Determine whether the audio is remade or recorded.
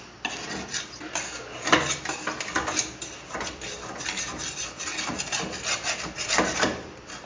recorded